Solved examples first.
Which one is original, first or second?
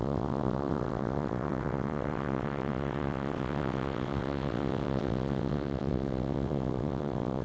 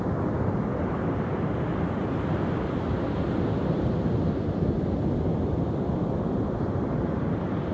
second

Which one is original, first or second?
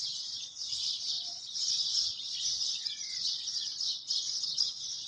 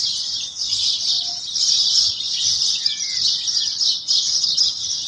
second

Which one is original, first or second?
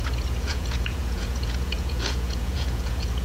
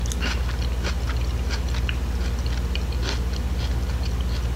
second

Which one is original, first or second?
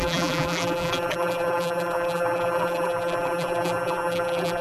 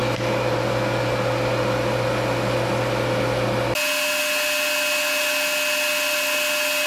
second